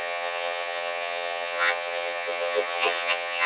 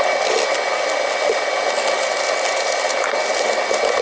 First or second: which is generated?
first